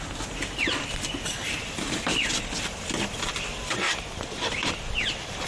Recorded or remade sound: recorded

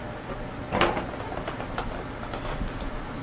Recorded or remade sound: recorded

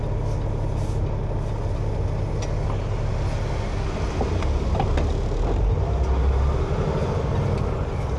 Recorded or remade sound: recorded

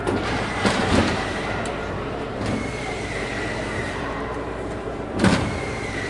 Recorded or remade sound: remade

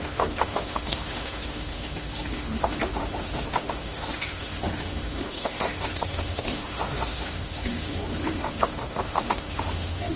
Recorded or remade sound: remade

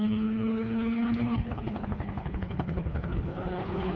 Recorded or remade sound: remade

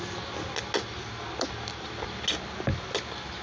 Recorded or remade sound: recorded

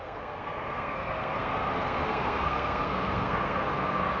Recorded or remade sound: remade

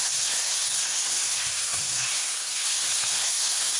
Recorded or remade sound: remade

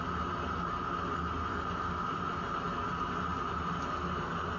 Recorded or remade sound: recorded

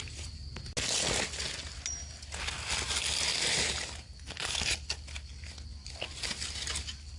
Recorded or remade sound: recorded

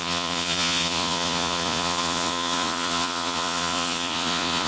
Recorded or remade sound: remade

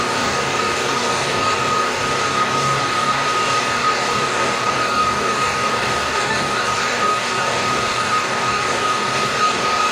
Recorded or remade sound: remade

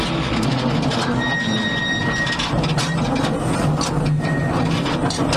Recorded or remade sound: recorded